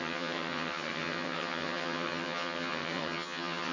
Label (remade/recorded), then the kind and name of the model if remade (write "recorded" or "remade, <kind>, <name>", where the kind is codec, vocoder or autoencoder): remade, vocoder, HiFi-GAN